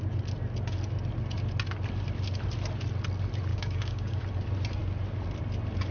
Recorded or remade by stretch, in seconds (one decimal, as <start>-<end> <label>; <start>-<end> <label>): 0.0-3.5 recorded; 3.5-4.2 remade; 4.2-5.9 recorded